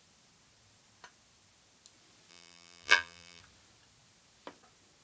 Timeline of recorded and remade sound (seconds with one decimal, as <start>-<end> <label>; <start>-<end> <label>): 0.0-2.3 recorded; 2.3-3.4 remade; 3.4-5.0 recorded